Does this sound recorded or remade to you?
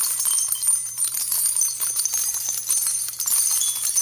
recorded